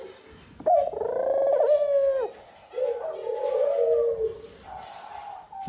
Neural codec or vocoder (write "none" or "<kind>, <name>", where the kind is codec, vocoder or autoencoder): none